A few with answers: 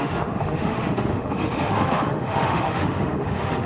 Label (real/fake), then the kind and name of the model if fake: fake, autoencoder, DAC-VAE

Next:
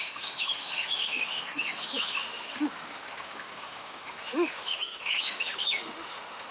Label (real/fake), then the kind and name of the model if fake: fake, autoencoder, DAC-VAE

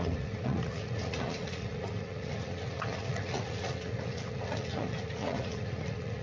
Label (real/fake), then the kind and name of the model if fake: fake, vocoder, Vocos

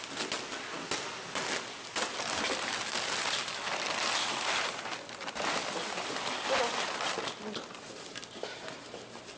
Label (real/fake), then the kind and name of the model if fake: real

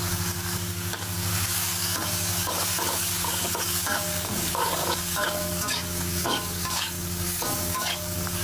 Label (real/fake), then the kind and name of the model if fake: fake, codec, DAC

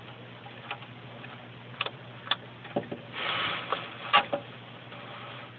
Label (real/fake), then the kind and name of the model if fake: real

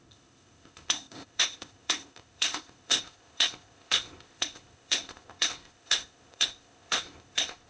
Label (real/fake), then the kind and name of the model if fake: fake, codec, ZipCodec